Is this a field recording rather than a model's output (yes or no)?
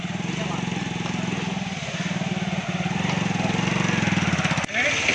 yes